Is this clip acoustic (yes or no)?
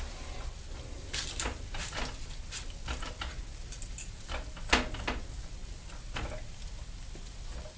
yes